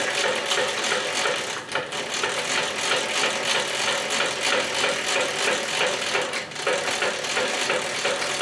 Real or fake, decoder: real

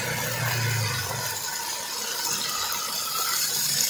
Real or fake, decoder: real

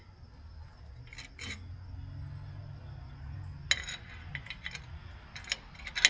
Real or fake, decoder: real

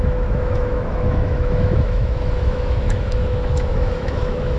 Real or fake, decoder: fake, autoencoder, DAC-VAE